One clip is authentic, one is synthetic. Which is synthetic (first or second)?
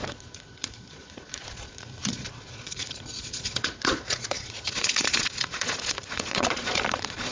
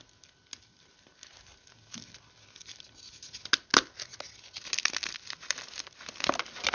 first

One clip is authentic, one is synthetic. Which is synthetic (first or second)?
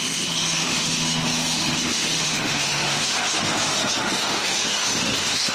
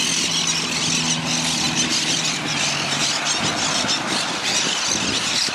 first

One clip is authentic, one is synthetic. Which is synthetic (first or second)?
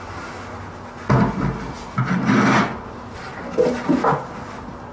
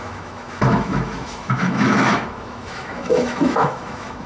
second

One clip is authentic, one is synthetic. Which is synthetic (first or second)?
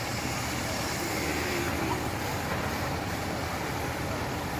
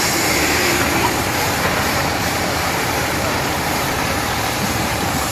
second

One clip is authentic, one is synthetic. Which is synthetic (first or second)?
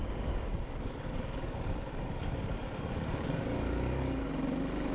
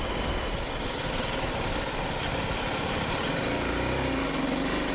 first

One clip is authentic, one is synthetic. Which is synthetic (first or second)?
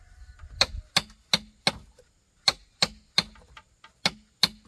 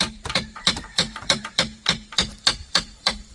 second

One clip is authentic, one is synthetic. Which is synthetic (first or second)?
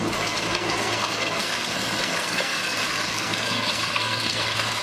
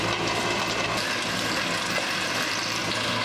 first